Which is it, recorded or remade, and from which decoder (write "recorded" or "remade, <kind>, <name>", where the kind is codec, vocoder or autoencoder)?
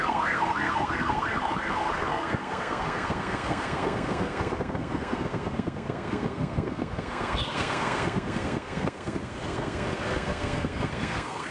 remade, codec, SNAC